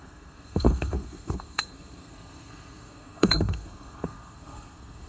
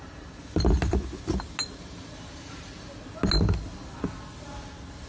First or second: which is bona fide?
second